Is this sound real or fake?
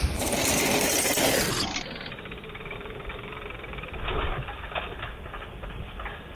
real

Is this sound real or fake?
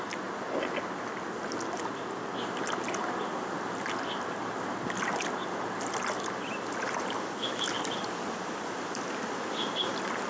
real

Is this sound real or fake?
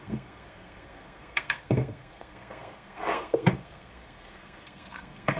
fake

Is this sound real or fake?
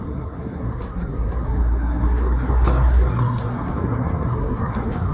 fake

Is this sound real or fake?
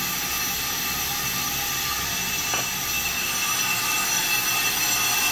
real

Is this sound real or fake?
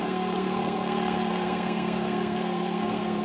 fake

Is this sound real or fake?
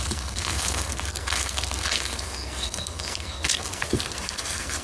fake